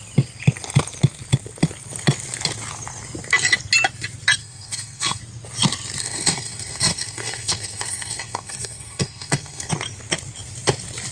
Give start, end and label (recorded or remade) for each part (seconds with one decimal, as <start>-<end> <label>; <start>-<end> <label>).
0.0-4.4 recorded; 4.4-5.2 remade; 5.2-6.0 recorded; 6.0-9.7 remade; 9.7-11.1 recorded